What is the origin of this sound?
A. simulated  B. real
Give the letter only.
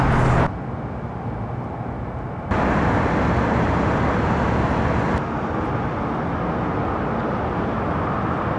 B